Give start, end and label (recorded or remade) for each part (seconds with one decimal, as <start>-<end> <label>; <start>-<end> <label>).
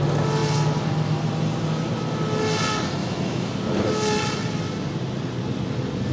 0.0-3.0 recorded; 3.0-3.5 remade; 3.5-6.1 recorded